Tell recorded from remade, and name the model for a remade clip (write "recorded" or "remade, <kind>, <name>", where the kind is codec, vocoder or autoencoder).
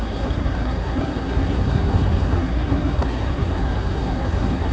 remade, codec, SNAC